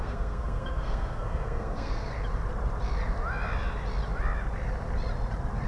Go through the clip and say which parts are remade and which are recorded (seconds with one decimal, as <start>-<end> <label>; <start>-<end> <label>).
0.0-2.1 remade; 2.1-5.7 recorded